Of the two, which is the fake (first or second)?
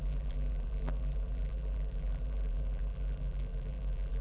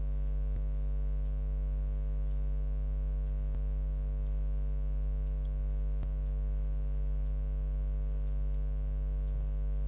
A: first